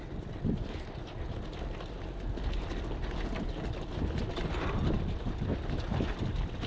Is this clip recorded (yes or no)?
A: yes